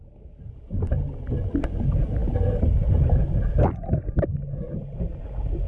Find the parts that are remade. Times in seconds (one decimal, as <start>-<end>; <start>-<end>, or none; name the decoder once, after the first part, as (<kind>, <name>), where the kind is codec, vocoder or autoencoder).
none